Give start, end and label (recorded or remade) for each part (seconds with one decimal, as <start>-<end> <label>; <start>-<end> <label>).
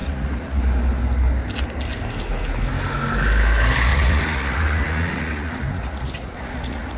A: 0.0-0.6 remade; 0.6-3.9 recorded; 3.9-7.0 remade